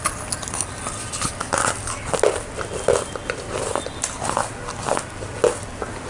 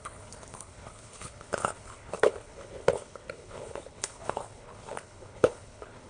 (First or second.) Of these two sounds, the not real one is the second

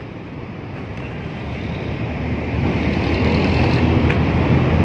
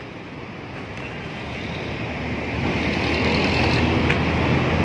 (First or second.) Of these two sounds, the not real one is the first